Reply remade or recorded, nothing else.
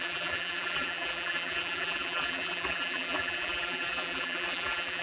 remade